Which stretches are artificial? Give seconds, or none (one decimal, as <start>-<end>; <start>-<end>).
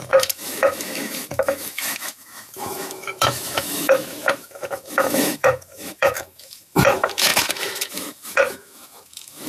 0.0-9.5